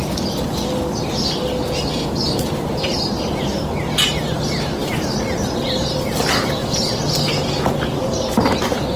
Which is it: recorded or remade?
recorded